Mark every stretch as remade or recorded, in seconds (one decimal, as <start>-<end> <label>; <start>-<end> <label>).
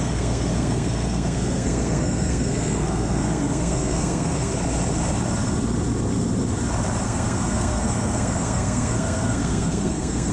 0.0-4.5 remade; 4.5-7.0 recorded; 7.0-10.3 remade